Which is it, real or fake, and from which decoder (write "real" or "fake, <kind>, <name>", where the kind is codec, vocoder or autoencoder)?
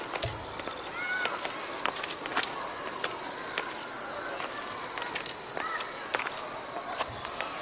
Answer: real